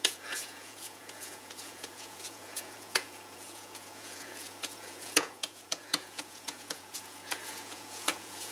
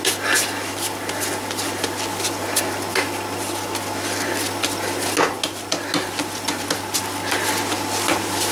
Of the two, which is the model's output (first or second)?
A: first